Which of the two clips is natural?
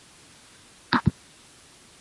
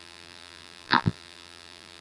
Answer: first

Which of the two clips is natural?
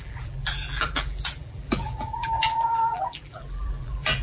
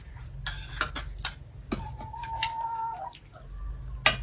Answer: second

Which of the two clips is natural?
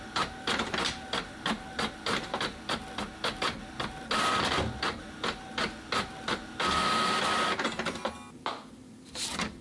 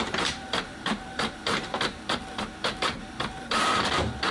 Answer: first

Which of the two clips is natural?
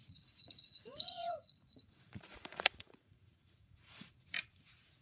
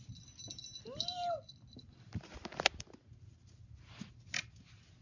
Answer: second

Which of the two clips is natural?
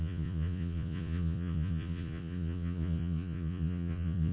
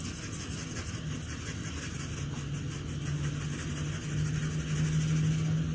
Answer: second